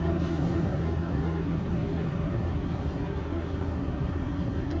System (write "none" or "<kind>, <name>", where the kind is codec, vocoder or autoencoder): codec, SNAC